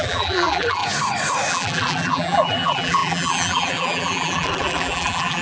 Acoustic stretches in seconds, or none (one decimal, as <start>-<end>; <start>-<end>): 0.8-1.5